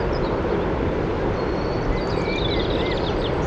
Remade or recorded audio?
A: recorded